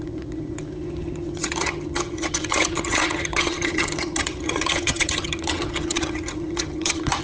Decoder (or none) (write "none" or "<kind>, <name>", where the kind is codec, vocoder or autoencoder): vocoder, HiFi-GAN